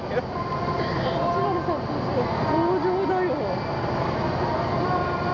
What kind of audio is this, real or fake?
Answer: real